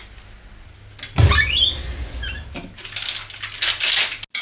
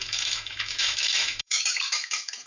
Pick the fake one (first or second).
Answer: second